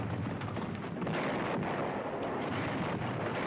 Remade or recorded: recorded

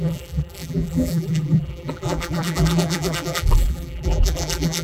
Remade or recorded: remade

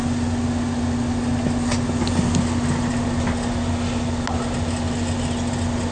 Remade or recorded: recorded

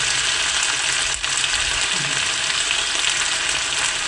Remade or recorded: recorded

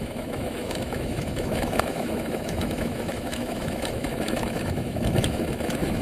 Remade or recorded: remade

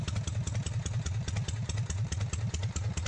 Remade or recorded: recorded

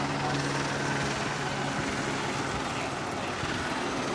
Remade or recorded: recorded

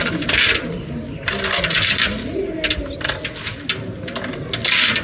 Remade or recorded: recorded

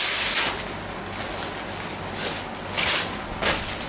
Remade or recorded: recorded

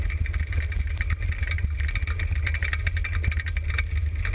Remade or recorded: recorded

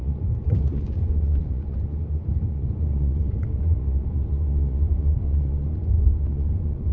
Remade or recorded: remade